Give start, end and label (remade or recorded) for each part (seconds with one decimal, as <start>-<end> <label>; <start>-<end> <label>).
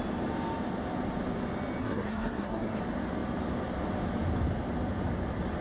0.0-1.8 recorded; 1.8-2.8 remade; 2.8-5.6 recorded